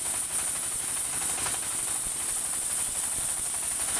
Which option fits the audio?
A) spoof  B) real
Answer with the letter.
B